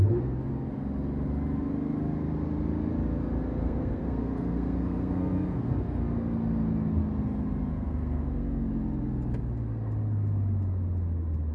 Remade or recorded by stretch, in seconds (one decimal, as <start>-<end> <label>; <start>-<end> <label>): 0.0-3.6 recorded; 3.6-5.7 remade; 5.7-7.7 recorded; 7.7-8.7 remade; 8.7-11.5 recorded